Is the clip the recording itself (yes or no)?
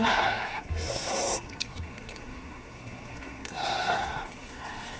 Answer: no